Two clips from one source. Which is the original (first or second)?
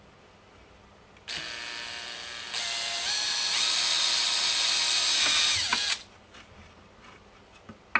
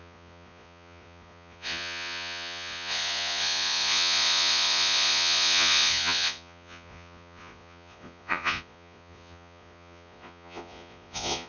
first